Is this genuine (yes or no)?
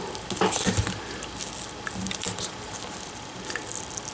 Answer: yes